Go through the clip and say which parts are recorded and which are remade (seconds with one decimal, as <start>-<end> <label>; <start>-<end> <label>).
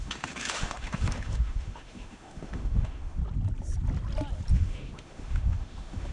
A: 0.0-3.2 remade; 3.2-4.5 recorded; 4.5-6.1 remade